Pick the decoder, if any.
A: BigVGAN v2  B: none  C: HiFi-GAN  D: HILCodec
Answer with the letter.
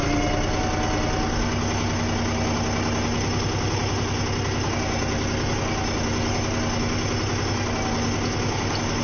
B